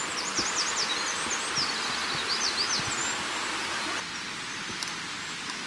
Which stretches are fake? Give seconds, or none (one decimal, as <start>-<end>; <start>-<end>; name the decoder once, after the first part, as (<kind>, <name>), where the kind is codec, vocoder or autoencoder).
none